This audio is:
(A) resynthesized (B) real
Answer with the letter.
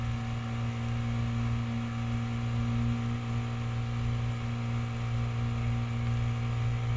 B